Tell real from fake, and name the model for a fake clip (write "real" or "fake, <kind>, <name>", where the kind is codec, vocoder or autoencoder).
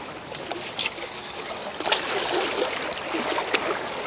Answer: real